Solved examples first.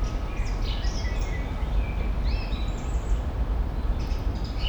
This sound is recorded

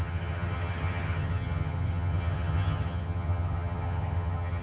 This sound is remade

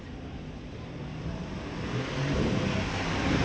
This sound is recorded